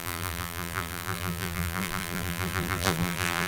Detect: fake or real fake